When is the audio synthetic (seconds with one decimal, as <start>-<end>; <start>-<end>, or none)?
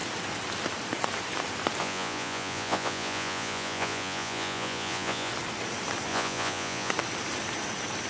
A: 1.8-5.3; 6.1-6.9